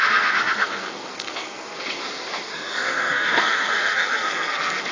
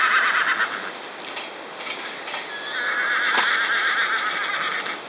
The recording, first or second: second